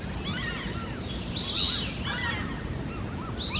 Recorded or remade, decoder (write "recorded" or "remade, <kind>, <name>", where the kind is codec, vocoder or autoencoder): recorded